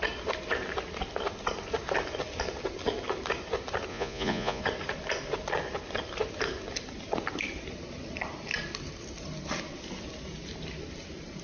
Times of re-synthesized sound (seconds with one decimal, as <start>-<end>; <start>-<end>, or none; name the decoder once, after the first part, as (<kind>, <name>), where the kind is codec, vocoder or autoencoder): 3.9-4.6 (vocoder, Vocos)